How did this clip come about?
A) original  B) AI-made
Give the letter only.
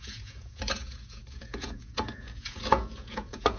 B